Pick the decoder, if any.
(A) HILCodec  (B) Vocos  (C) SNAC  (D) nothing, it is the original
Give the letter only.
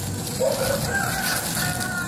D